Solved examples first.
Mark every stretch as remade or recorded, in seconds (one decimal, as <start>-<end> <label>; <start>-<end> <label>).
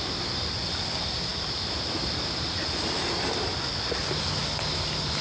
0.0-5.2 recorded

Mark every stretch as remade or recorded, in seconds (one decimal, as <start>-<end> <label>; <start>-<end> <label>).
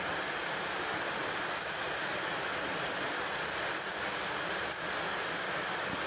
0.0-6.1 recorded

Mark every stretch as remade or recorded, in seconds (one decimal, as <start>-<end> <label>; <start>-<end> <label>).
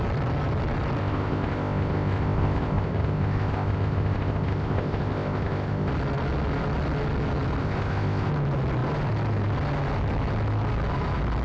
0.0-1.0 recorded; 1.0-5.9 remade; 5.9-7.6 recorded; 7.6-8.3 remade; 8.3-11.4 recorded